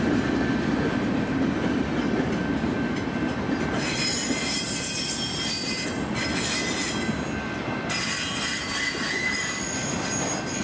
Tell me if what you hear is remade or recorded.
recorded